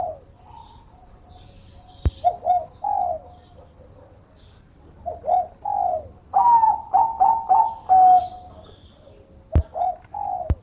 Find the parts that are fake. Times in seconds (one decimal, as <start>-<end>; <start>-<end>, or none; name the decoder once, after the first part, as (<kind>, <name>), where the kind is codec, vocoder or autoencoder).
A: 0.6-2.1 (vocoder, BigVGAN v2)